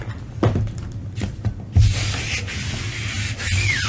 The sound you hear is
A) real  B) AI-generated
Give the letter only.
A